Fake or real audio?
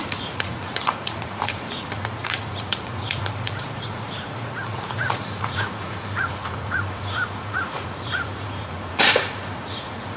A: fake